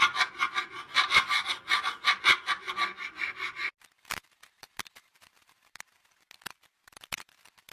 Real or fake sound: real